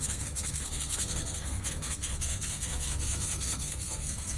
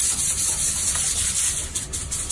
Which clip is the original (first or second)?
second